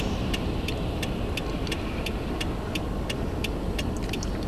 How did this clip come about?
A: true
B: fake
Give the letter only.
A